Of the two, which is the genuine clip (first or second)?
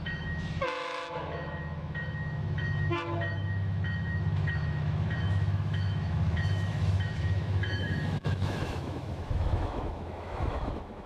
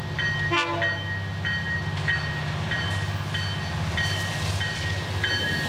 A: second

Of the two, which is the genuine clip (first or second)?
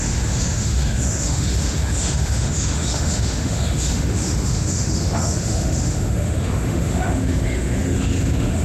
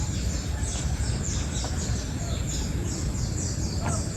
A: second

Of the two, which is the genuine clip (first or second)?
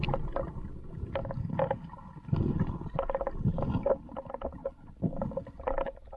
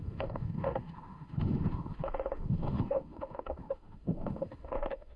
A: first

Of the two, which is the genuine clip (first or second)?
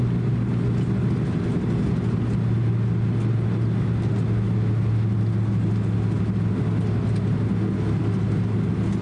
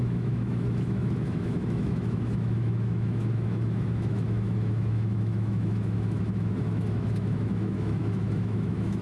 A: first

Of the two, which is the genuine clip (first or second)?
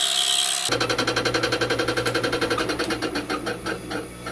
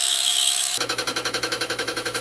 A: first